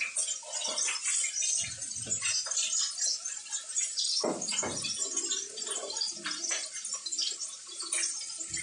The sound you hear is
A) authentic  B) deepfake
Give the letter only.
A